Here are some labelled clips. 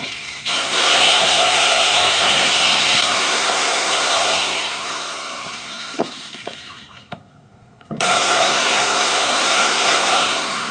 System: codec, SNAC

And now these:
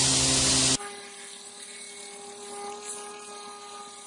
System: none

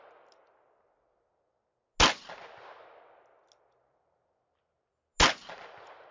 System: none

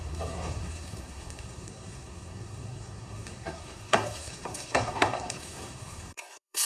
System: codec, SNAC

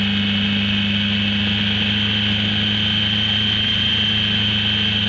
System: none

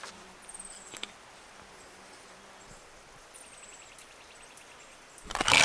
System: none